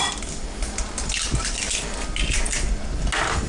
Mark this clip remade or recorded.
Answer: recorded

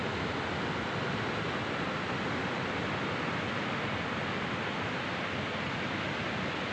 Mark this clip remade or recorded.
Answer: recorded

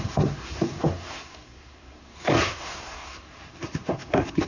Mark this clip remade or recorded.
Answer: remade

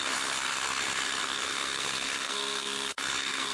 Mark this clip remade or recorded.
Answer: remade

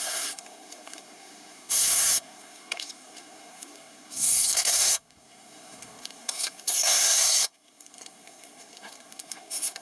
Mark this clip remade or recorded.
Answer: remade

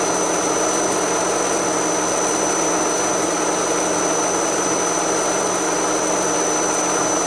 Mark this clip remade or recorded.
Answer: recorded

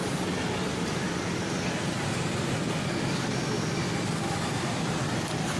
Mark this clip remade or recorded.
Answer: recorded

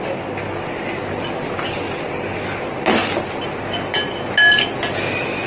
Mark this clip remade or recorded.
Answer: recorded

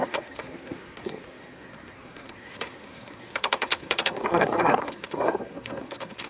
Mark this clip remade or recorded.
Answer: remade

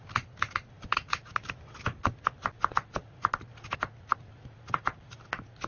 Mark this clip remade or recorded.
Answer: recorded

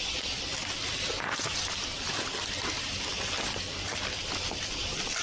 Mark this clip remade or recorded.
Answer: recorded